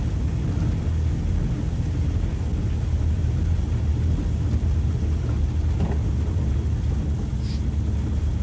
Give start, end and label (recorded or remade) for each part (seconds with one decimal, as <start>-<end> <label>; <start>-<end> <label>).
0.0-8.4 recorded